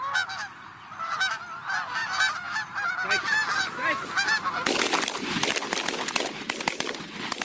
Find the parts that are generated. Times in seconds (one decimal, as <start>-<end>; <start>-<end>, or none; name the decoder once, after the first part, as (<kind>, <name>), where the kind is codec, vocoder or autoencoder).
2.0-2.9 (vocoder, BigVGAN v2)